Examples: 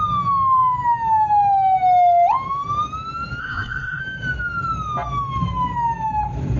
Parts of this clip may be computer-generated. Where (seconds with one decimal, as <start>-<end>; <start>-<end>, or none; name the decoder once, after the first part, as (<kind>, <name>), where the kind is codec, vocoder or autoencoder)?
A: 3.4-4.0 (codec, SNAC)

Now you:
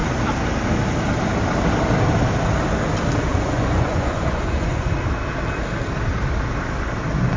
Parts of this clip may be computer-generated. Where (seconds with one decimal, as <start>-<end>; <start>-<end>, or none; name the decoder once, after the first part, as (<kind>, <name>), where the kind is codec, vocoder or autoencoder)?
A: 3.3-4.9 (vocoder, Vocos)

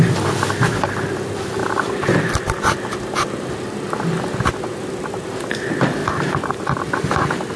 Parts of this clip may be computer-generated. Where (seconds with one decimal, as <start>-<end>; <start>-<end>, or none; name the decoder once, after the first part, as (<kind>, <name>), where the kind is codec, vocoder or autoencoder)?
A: 6.0-6.5 (vocoder, BigVGAN v2)

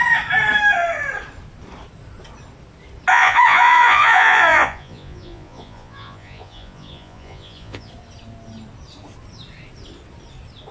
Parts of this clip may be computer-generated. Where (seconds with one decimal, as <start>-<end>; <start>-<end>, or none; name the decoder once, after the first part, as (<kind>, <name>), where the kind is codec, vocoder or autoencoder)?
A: 3.1-7.9 (vocoder, Vocos)